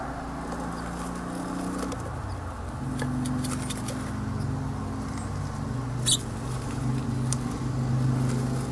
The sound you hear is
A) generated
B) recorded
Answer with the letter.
B